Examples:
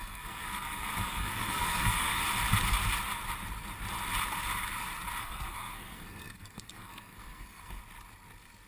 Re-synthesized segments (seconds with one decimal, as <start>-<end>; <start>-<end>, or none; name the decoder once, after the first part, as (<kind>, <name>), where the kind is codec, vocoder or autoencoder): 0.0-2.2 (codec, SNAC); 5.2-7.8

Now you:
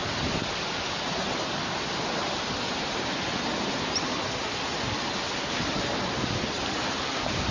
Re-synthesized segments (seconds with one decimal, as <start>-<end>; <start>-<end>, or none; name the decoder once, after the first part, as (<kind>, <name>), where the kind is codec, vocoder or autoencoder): none

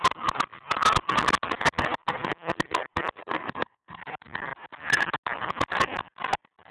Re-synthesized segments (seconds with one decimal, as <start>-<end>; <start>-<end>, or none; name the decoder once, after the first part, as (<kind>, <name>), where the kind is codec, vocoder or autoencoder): 3.2-4.0 (codec, SNAC)

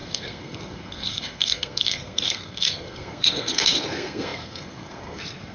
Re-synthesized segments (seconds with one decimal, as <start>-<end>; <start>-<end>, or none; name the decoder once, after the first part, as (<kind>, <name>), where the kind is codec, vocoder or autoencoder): 0.0-5.5 (codec, SNAC)

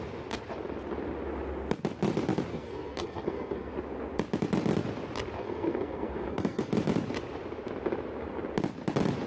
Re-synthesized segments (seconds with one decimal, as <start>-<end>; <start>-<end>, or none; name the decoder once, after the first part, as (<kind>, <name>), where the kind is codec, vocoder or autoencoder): 2.5-3.7 (codec, SNAC); 5.4-6.7

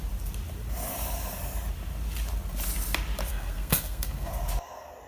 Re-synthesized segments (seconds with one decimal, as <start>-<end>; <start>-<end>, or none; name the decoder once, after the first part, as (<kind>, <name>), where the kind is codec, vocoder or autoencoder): 3.3-4.3 (codec, SNAC)